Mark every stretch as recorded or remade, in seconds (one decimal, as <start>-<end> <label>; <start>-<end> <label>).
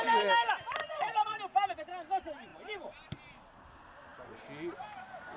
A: 0.0-0.8 recorded; 0.8-1.4 remade; 1.4-5.4 recorded